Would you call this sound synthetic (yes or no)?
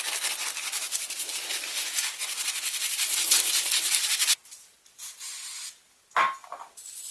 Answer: no